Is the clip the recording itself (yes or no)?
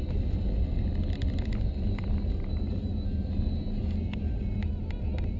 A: yes